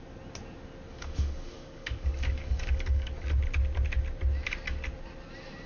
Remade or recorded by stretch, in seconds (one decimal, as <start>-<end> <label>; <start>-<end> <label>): 0.0-0.9 recorded; 0.9-3.1 remade; 3.1-5.7 recorded